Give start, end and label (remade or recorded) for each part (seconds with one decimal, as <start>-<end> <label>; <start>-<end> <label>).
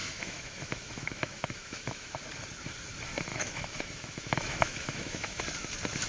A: 0.0-2.2 remade; 2.2-3.3 recorded; 3.3-5.4 remade; 5.4-6.1 recorded